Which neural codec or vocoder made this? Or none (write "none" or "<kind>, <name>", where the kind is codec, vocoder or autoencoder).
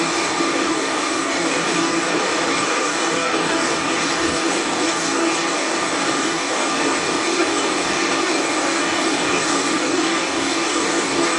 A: codec, DAC